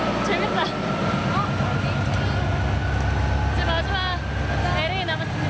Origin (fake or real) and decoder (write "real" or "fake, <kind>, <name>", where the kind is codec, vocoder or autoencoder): real